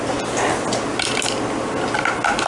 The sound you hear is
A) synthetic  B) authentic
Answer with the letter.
B